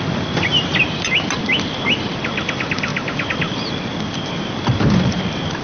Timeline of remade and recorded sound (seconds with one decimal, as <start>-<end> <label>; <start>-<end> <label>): 0.0-5.6 recorded